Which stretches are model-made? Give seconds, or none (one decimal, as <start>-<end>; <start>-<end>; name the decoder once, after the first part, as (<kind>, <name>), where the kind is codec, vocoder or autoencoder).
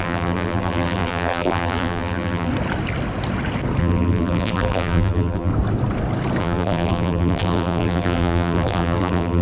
0.0-2.5 (vocoder, BigVGAN v2); 3.8-5.5; 6.4-9.4